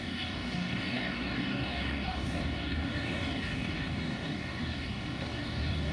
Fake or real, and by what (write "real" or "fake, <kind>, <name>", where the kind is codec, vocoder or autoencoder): fake, codec, DAC